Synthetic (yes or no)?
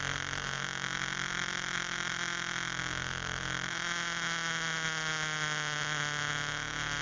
no